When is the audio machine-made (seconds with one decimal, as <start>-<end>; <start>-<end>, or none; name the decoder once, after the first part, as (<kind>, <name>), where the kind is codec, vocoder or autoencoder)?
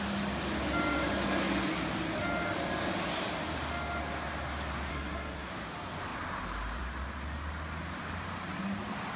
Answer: 4.9-5.5 (codec, SNAC)